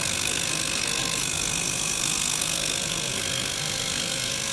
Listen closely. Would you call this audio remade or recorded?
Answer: remade